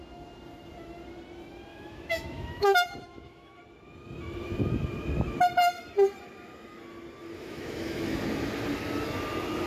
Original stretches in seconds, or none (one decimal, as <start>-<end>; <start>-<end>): 0.0-1.7; 3.6-7.2; 8.2-9.7